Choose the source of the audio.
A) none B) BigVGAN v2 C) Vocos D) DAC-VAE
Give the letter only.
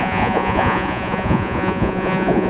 C